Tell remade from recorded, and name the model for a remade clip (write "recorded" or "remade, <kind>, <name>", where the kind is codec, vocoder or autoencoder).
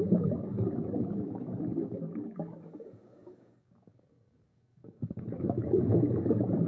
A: remade, codec, DAC